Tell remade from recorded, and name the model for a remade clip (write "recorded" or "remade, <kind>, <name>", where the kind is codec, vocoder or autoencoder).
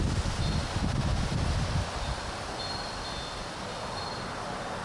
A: recorded